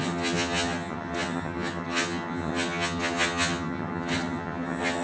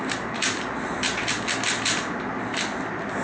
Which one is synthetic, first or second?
first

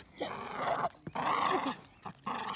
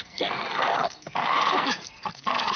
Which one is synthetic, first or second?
second